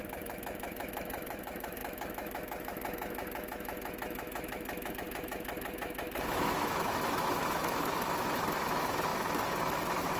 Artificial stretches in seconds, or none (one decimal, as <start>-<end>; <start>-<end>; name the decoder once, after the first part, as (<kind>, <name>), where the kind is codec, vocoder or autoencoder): 0.0-10.2 (autoencoder, DAC-VAE)